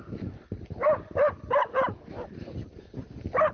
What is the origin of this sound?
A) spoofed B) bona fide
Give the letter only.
B